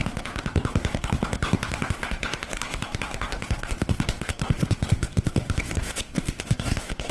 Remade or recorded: remade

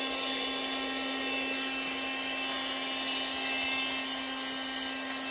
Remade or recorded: recorded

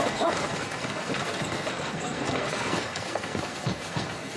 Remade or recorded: remade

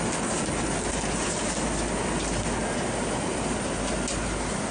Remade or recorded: recorded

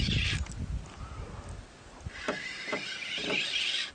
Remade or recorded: recorded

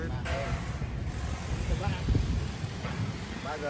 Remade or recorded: recorded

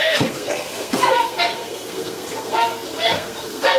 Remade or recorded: remade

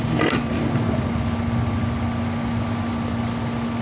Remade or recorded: recorded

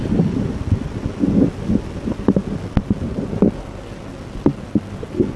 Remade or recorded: recorded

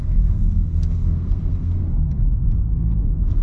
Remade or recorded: remade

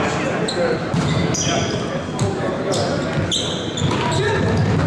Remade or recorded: recorded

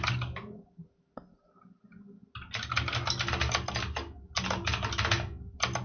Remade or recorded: recorded